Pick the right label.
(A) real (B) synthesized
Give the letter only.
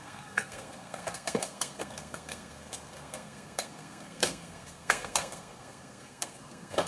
B